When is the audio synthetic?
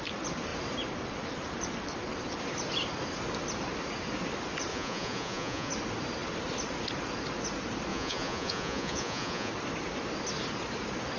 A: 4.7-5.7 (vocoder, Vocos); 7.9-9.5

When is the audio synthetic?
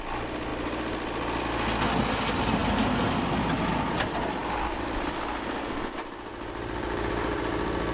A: 4.4-5.3 (vocoder, BigVGAN v2)